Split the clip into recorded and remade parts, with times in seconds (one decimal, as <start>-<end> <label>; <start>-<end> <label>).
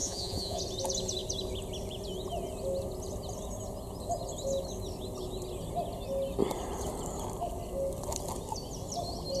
0.0-0.6 remade; 0.6-9.4 recorded